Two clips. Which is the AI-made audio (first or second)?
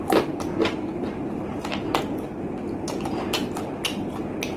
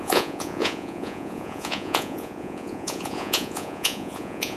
second